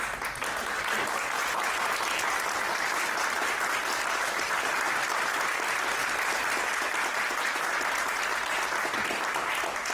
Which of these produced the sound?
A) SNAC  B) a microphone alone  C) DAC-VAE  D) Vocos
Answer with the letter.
B